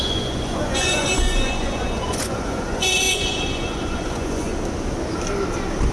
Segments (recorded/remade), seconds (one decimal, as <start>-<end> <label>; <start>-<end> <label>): 0.0-4.5 remade; 4.5-5.9 recorded